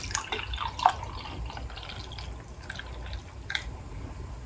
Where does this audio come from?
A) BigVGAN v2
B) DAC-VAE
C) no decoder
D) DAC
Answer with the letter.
C